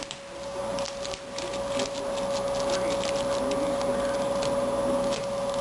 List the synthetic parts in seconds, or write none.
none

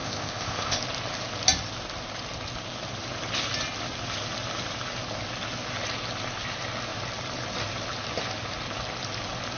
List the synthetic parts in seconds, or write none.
0.0-0.8

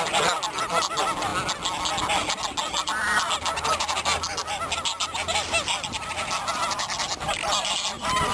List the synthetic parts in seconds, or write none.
none

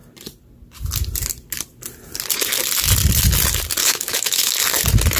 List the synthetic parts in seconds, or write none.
3.8-4.5

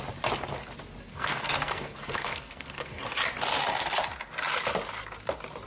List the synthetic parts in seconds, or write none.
1.1-3.0

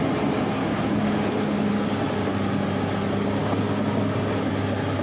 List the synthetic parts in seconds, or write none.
0.6-1.7; 3.4-4.5

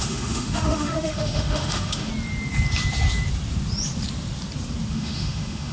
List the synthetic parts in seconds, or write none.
0.0-2.1; 4.9-5.7

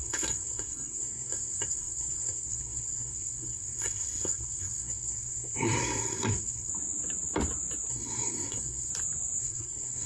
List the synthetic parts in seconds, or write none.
0.0-6.7; 7.9-8.9; 9.4-10.1